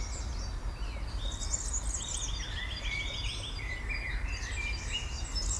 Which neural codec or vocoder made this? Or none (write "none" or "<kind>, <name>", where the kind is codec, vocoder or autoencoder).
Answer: none